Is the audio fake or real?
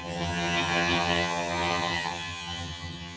fake